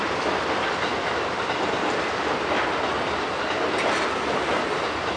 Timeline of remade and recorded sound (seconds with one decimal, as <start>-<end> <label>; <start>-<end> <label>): 0.0-5.2 recorded